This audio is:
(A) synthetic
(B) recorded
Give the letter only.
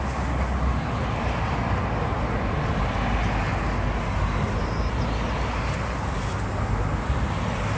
B